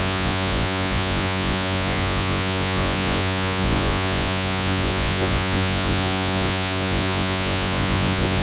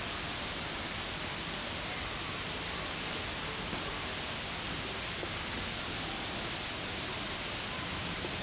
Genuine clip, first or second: second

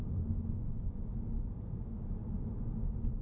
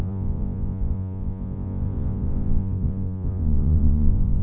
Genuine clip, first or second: first